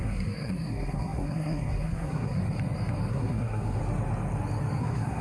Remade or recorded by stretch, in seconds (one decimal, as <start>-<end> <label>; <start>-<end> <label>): 0.0-2.4 remade; 2.4-3.1 recorded; 3.1-3.8 remade; 3.8-4.8 recorded; 4.8-5.2 remade